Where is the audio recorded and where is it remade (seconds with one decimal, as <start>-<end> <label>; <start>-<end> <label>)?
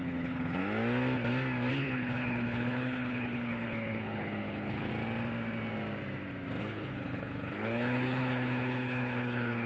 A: 0.0-0.6 remade; 0.6-1.7 recorded; 1.7-4.9 remade; 4.9-6.6 recorded; 6.6-9.7 remade